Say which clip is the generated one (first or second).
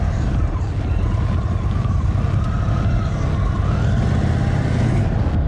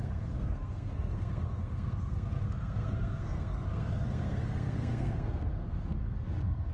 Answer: second